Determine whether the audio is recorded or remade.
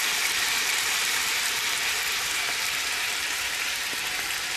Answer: remade